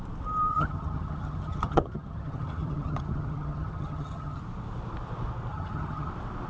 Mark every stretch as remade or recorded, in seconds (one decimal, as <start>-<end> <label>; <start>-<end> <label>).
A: 0.0-0.5 recorded; 0.5-4.4 remade; 4.4-5.5 recorded; 5.5-6.1 remade; 6.1-6.5 recorded